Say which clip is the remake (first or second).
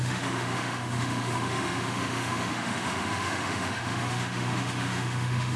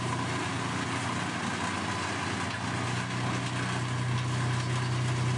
first